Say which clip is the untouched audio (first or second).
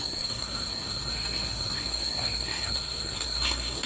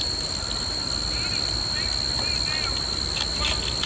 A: second